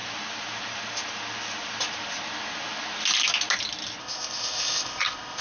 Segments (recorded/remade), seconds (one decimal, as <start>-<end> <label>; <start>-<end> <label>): 0.0-4.0 recorded; 4.0-5.4 remade